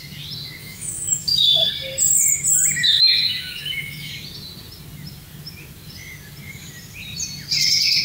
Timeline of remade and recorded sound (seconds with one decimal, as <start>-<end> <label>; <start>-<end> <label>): 0.0-0.6 recorded; 0.6-1.7 remade; 1.7-2.9 recorded; 2.9-4.1 remade; 4.1-8.0 recorded